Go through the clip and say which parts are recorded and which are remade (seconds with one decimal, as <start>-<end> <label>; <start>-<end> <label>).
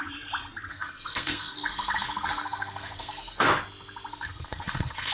0.0-0.7 recorded; 0.7-3.5 remade; 3.5-4.1 recorded; 4.1-5.1 remade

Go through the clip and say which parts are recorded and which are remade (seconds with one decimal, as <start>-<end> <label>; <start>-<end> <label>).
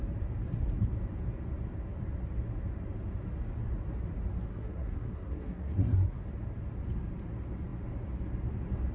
0.0-4.5 recorded; 4.5-6.2 remade; 6.2-8.9 recorded